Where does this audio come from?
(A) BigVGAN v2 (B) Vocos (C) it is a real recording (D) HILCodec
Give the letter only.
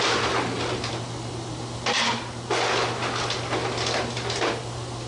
C